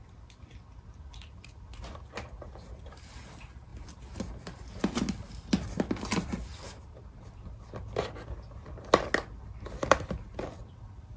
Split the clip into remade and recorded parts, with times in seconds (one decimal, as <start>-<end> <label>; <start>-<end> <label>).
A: 0.0-11.2 recorded